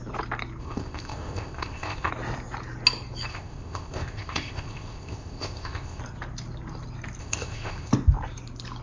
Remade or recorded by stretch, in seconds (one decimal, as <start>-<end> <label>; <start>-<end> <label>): 0.0-0.6 recorded; 0.6-2.1 remade; 2.1-3.3 recorded; 3.3-6.0 remade; 6.0-7.2 recorded; 7.2-7.9 remade; 7.9-8.8 recorded